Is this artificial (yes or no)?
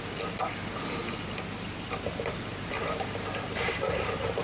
yes